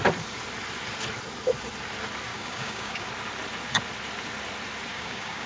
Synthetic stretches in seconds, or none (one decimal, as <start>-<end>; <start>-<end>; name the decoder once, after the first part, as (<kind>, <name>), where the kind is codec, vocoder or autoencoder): 2.3-3.1 (codec, DAC); 4.9-5.5